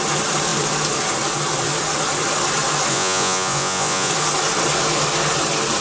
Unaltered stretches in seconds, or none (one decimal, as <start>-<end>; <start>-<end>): 0.0-2.9; 4.1-5.8

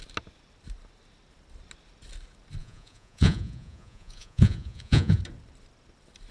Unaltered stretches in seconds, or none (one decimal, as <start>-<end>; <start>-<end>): 0.0-2.6; 5.2-6.3

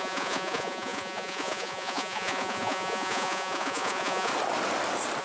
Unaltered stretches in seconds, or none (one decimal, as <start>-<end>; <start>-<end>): 4.3-5.2

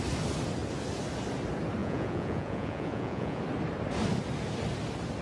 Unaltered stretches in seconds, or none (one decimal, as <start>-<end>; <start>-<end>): 0.0-1.8; 3.4-5.2

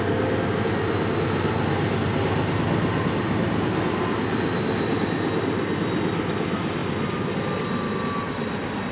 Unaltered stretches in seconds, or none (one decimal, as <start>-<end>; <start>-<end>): 0.0-8.9

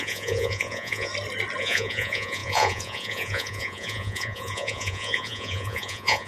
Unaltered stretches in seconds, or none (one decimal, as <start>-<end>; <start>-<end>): 1.1-1.6

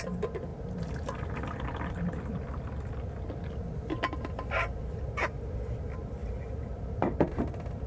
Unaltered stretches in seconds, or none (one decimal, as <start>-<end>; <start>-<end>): 0.0-7.9